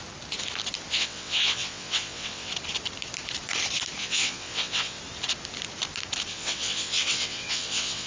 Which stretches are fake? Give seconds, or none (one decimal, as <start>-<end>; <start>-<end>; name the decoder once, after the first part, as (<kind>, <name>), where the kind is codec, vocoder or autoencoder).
0.9-2.5 (vocoder, WaveNeXt); 4.0-5.0; 6.3-8.1